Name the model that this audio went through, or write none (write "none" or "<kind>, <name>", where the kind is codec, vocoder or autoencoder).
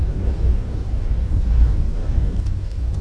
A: codec, DAC